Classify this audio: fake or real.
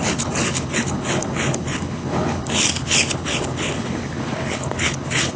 fake